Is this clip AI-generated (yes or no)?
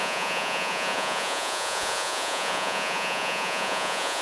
yes